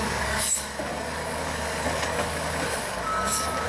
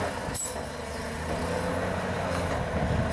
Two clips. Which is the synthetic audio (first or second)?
first